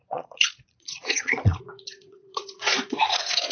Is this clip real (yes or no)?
no